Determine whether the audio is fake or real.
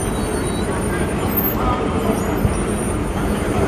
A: real